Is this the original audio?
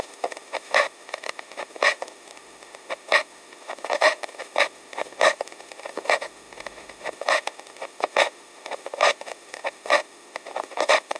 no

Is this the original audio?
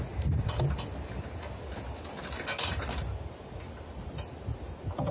yes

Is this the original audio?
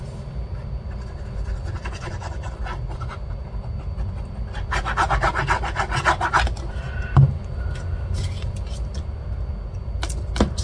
yes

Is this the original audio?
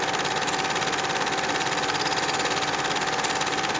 yes